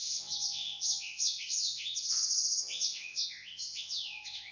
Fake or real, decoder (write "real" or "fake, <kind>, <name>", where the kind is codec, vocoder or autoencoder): fake, vocoder, WaveNeXt